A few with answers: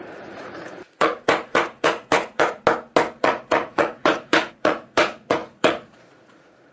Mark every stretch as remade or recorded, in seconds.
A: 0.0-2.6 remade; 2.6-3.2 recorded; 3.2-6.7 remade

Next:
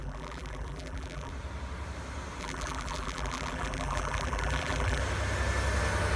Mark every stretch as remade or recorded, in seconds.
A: 0.0-1.3 remade; 1.3-2.4 recorded; 2.4-5.0 remade; 5.0-6.2 recorded

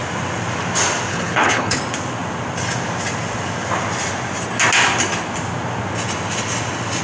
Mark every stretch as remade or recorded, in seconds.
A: 0.0-1.1 recorded; 1.1-1.8 remade; 1.8-7.0 recorded

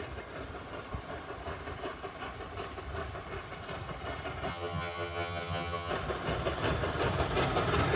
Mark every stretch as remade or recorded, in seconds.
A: 0.0-4.5 recorded; 4.5-5.9 remade; 5.9-8.0 recorded

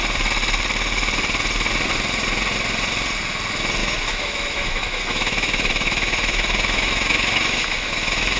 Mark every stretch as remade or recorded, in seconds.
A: 0.0-3.8 recorded; 3.8-8.4 remade

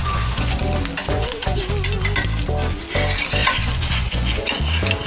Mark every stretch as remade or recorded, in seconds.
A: 0.0-0.6 remade; 0.6-1.0 recorded; 1.0-1.6 remade; 1.6-3.4 recorded; 3.4-4.6 remade; 4.6-5.1 recorded

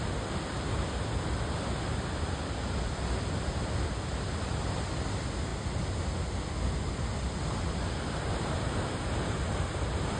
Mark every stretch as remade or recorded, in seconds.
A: 0.0-10.2 recorded

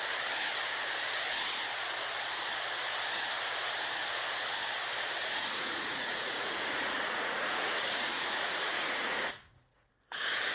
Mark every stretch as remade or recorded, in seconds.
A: 0.0-5.2 recorded; 5.2-9.9 remade; 9.9-10.5 recorded